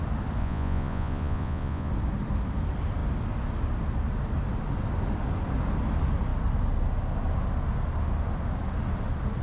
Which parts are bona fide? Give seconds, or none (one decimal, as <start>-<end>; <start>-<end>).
0.0-0.4; 1.9-9.4